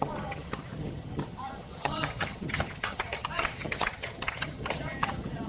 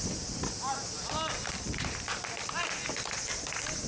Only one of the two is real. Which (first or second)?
second